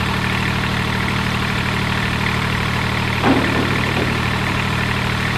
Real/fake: fake